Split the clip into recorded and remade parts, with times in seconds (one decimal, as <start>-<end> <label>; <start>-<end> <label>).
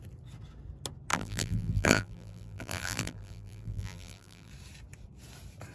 0.0-1.1 recorded; 1.1-4.5 remade; 4.5-5.7 recorded